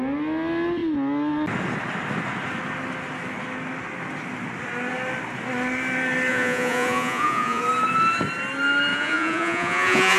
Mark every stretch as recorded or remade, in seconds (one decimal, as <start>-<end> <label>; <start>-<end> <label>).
0.0-6.3 recorded; 6.3-7.6 remade; 7.6-8.9 recorded; 8.9-10.2 remade